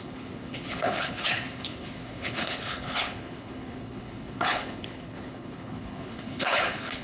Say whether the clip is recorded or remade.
remade